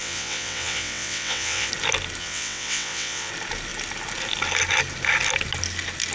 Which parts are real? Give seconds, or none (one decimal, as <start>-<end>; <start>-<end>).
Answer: 1.7-2.2; 3.3-6.1